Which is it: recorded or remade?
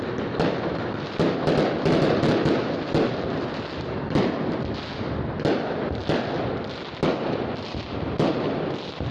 recorded